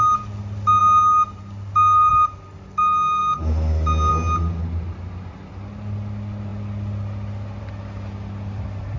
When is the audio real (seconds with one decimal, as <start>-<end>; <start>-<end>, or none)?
0.0-9.0